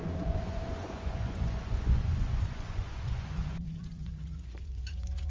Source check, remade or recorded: remade